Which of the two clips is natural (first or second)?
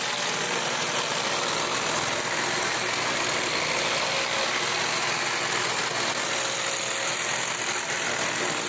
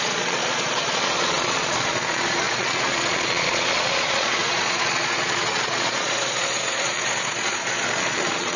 first